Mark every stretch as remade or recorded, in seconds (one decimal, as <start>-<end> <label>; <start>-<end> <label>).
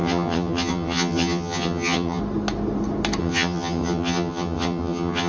0.0-2.2 remade; 2.2-3.2 recorded; 3.2-5.3 remade